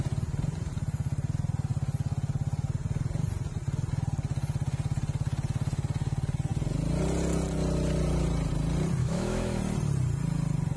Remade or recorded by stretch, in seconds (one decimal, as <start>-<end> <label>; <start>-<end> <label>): 0.0-9.0 recorded; 9.0-9.6 remade; 9.6-10.8 recorded